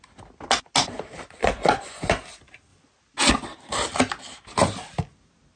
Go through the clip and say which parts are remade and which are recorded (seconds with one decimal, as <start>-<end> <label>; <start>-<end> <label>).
0.0-1.4 recorded; 1.4-2.0 remade; 2.0-5.6 recorded